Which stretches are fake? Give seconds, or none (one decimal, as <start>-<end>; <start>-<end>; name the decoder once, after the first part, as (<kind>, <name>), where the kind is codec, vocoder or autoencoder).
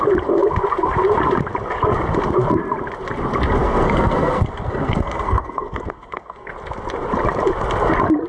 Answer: 3.6-6.5 (codec, SNAC)